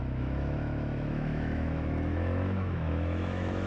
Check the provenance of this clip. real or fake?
fake